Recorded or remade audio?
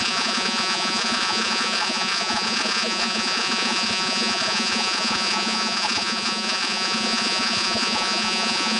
remade